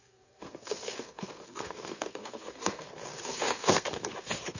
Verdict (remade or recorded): remade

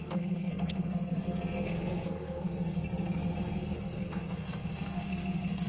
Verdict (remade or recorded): remade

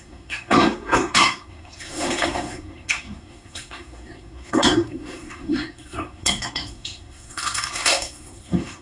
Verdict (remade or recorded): remade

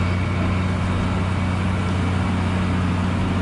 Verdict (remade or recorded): recorded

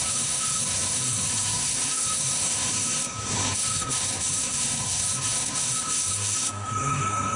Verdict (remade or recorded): remade